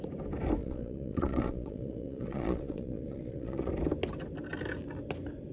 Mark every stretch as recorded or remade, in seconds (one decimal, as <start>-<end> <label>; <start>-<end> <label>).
0.0-0.6 recorded; 0.6-3.7 remade; 3.7-5.5 recorded